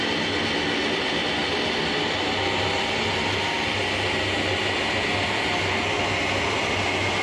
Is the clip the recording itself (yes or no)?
yes